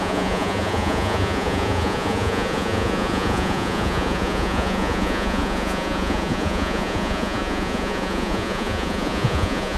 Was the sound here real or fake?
fake